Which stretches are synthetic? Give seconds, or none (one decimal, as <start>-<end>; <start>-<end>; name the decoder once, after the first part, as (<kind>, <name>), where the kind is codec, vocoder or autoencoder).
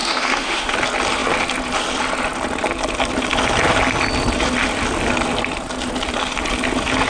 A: 0.0-0.7 (autoencoder, DAC-VAE)